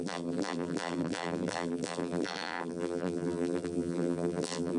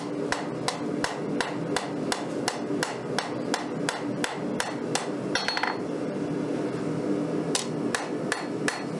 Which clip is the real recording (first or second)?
second